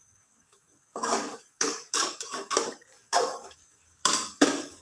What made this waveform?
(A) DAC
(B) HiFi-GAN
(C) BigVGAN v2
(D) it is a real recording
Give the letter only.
A